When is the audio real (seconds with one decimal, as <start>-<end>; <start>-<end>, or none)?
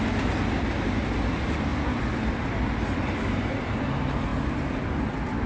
0.0-5.5